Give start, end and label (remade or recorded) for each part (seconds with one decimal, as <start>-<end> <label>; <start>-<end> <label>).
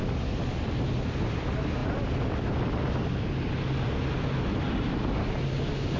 0.0-6.0 recorded